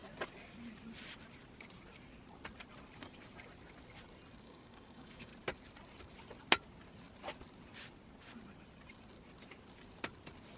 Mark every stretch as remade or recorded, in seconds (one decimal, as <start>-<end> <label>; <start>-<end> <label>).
0.0-4.4 recorded; 4.4-5.3 remade; 5.3-10.6 recorded